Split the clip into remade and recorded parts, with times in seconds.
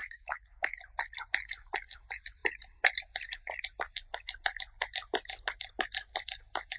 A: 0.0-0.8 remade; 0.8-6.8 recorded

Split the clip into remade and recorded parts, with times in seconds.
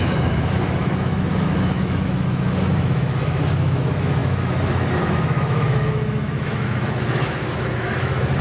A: 0.0-8.4 remade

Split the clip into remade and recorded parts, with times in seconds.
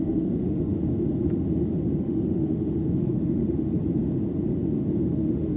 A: 0.0-0.7 remade; 0.7-2.0 recorded; 2.0-3.4 remade; 3.4-5.0 recorded; 5.0-5.6 remade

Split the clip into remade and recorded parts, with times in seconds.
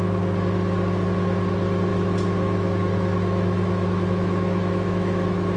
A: 0.0-1.9 recorded; 1.9-5.6 remade